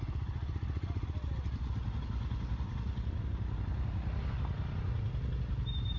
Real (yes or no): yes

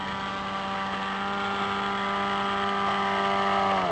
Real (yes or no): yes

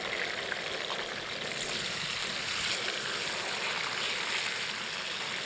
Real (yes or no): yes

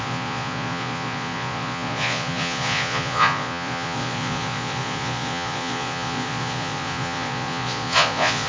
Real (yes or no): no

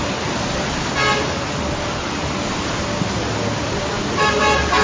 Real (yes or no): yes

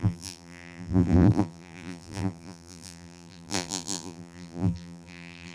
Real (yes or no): no